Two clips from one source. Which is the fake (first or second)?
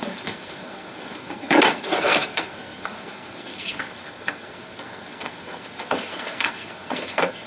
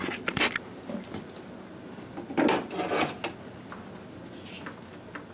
first